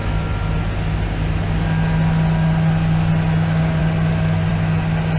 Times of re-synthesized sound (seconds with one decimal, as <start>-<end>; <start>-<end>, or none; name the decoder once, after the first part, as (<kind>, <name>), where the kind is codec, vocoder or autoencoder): none